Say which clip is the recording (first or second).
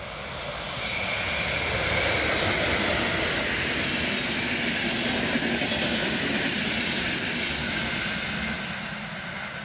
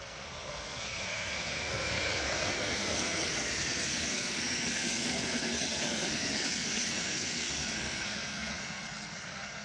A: first